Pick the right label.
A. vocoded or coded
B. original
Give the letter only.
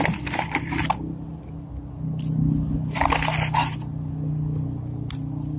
B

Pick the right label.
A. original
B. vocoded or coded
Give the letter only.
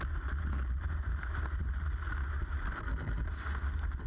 A